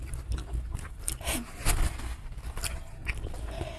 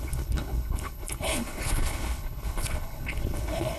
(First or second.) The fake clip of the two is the second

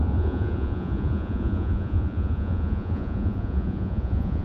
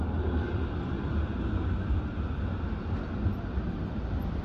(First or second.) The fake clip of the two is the first